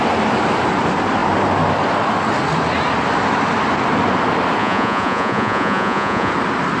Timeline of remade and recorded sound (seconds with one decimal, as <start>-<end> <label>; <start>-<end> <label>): 0.0-4.6 recorded; 4.6-6.3 remade; 6.3-6.8 recorded